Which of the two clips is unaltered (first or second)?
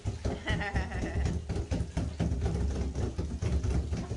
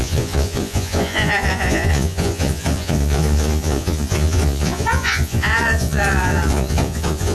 first